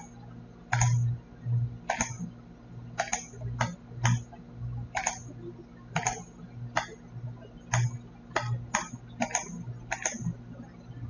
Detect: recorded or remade recorded